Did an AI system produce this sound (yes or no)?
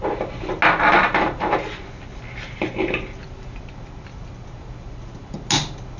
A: no